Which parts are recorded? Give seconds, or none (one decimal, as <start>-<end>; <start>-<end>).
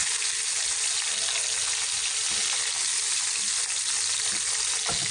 0.0-5.1